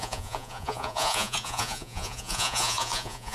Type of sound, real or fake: fake